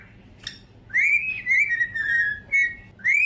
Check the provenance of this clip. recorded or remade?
recorded